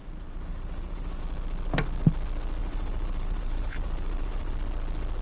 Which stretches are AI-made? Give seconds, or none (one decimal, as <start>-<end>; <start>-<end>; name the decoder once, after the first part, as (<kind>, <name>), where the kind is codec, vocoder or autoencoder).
0.0-1.2 (vocoder, BigVGAN v2); 2.6-4.5